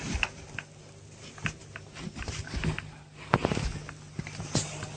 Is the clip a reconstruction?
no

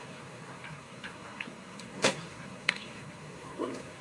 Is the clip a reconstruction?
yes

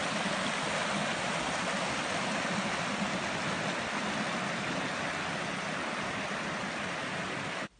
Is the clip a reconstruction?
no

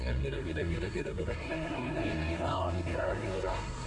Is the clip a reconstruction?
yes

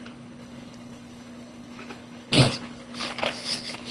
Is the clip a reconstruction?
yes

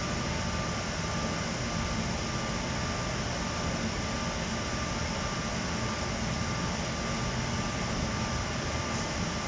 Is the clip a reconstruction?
no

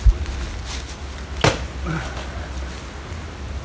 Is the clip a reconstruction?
no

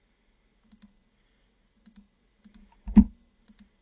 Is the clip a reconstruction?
no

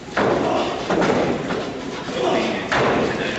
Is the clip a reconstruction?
no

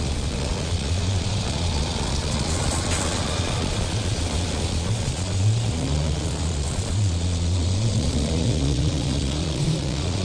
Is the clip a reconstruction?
yes